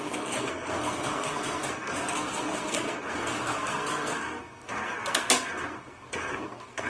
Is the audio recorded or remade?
remade